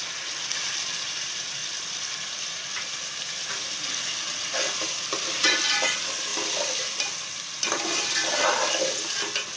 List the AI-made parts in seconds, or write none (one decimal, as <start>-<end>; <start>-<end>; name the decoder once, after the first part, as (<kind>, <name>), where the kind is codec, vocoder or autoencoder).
none